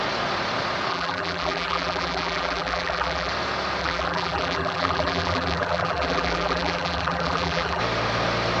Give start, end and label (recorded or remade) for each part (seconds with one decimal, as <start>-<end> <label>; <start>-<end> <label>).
0.0-0.9 recorded; 0.9-3.3 remade; 3.3-3.8 recorded; 3.8-7.8 remade; 7.8-8.6 recorded